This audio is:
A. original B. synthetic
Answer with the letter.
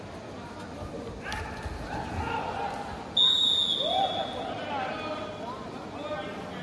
A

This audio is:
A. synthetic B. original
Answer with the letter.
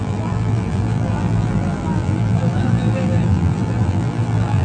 A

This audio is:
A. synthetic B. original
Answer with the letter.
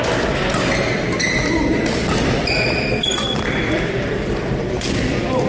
B